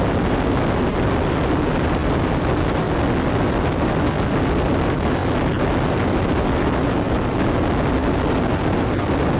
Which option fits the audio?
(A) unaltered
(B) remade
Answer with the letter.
A